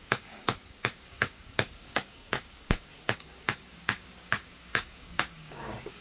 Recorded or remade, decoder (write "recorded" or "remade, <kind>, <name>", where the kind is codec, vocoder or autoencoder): remade, codec, DAC